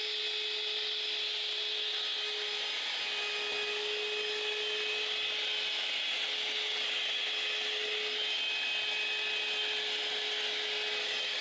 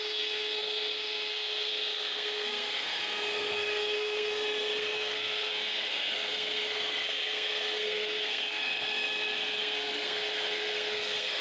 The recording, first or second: first